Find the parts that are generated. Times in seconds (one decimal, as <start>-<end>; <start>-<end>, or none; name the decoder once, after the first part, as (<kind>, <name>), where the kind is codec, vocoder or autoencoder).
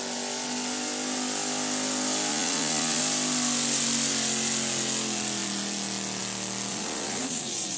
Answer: 2.3-3.0 (vocoder, Vocos); 6.7-7.8